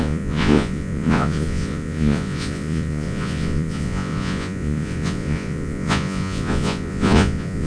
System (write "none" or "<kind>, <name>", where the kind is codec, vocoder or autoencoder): vocoder, Vocos